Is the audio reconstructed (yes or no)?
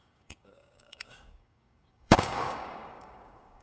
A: yes